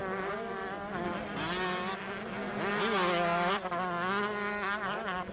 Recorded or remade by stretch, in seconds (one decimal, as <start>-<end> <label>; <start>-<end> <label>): 0.0-5.3 recorded